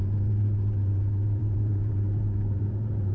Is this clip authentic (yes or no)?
no